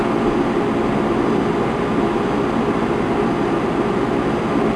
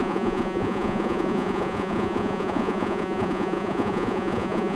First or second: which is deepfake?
second